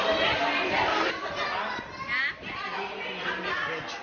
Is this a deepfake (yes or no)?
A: no